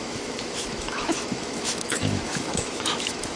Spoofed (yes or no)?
yes